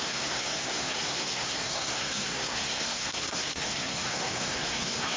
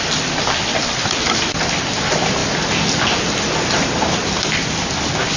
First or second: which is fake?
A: first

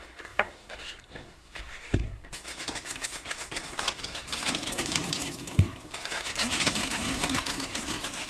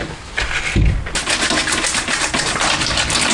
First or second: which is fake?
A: first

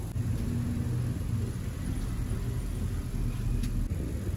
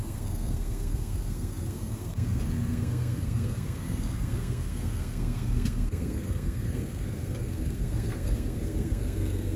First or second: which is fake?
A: second